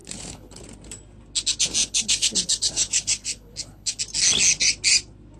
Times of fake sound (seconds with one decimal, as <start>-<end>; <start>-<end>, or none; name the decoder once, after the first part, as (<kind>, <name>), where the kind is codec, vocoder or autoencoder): 0.0-0.6 (codec, HILCodec); 1.8-4.0